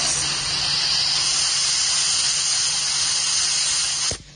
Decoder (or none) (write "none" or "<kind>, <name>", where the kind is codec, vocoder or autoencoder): none